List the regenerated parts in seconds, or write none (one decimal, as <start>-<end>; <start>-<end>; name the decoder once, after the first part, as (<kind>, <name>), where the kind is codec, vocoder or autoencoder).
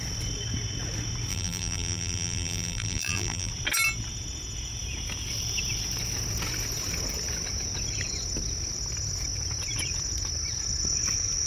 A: 1.3-3.5 (vocoder, BigVGAN v2)